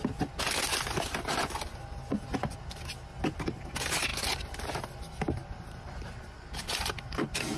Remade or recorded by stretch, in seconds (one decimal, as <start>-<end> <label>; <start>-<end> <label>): 0.0-7.6 recorded